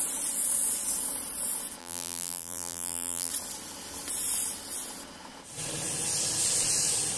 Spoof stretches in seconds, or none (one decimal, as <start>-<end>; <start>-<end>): 1.8-3.3